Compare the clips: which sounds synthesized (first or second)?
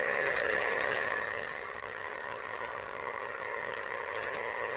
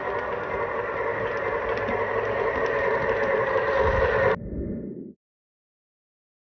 first